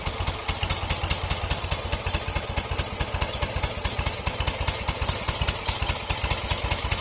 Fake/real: real